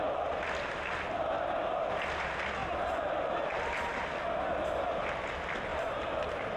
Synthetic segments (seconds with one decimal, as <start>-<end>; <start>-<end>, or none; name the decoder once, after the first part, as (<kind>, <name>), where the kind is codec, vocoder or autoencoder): 2.6-4.1 (vocoder, BigVGAN v2); 5.7-6.6